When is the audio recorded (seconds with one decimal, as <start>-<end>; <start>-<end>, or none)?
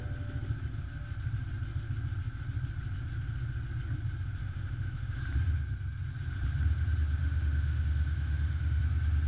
0.0-4.4; 5.2-7.2; 8.8-9.3